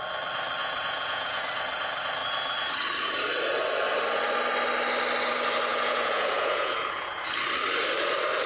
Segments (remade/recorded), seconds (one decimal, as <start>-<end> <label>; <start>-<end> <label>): 0.0-0.6 recorded; 0.6-1.4 remade; 1.4-5.7 recorded; 5.7-7.2 remade; 7.2-8.5 recorded